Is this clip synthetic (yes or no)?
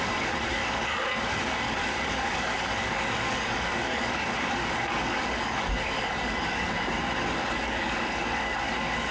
yes